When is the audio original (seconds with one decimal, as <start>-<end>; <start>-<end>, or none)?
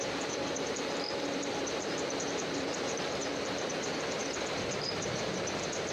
4.2-4.7